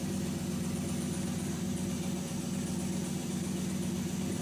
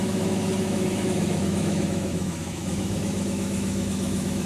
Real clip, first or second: first